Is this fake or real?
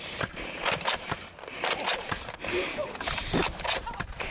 fake